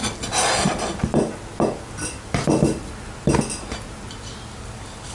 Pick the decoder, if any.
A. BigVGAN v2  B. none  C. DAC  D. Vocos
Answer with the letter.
B